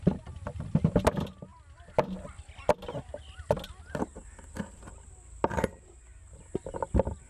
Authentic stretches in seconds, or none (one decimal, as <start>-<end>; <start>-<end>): 0.0-7.3